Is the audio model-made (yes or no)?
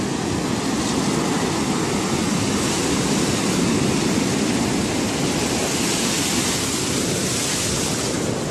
no